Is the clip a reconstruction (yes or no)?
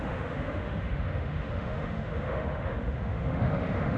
yes